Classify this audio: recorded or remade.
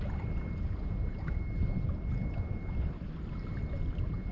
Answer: recorded